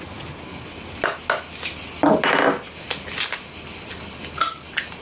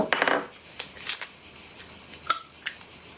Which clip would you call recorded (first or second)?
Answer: first